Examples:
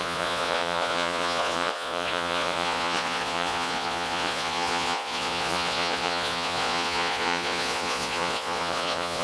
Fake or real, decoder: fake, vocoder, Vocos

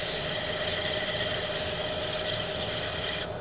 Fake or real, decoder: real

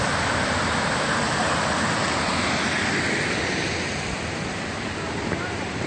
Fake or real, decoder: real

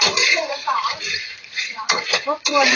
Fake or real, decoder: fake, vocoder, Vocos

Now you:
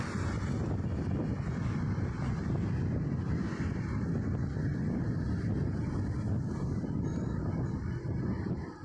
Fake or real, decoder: real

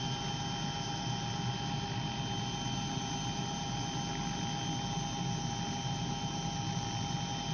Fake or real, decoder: real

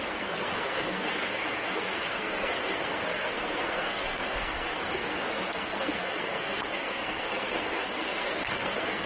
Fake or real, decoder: fake, codec, SNAC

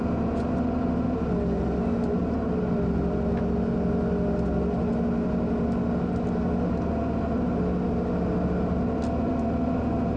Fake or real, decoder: real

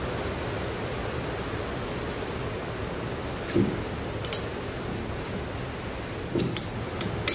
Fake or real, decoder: real